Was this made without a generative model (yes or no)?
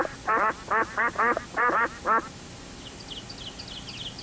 yes